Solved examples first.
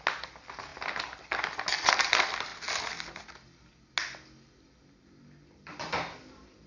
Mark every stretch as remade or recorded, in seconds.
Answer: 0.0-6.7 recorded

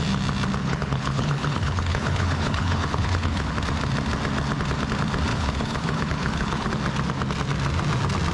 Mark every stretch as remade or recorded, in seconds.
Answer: 0.0-0.6 recorded; 0.6-3.5 remade; 3.5-5.3 recorded; 5.3-6.7 remade; 6.7-8.3 recorded

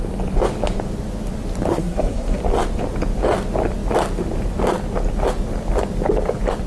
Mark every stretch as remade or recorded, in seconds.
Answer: 0.0-1.7 recorded; 1.7-2.4 remade; 2.4-6.7 recorded

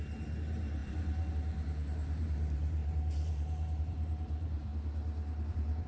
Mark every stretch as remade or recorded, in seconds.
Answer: 0.0-4.7 remade; 4.7-5.5 recorded; 5.5-5.9 remade

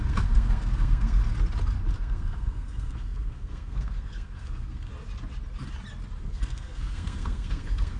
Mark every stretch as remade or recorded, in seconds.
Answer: 0.0-1.2 remade; 1.2-1.9 recorded; 1.9-4.9 remade; 4.9-6.2 recorded; 6.2-8.0 remade

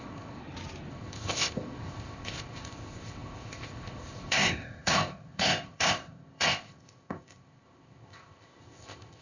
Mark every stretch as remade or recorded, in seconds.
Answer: 0.0-0.4 remade; 0.4-0.9 recorded; 0.9-9.2 remade

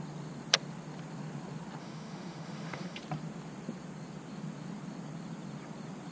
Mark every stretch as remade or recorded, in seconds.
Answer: 0.0-1.8 recorded; 1.8-3.0 remade; 3.0-6.1 recorded